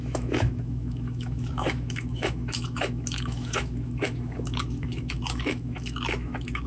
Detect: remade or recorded remade